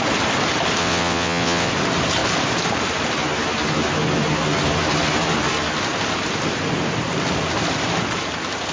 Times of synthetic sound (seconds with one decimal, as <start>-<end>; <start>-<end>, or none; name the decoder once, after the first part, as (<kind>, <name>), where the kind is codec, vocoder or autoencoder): 0.8-1.7 (vocoder, WaveNeXt)